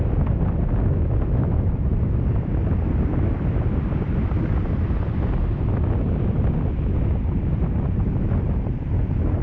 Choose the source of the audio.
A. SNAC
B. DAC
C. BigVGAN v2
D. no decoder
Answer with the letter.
D